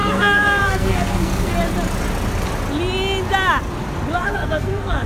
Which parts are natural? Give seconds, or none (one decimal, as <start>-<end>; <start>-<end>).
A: 1.5-4.2